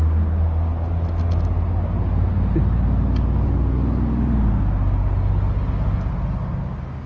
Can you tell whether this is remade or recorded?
recorded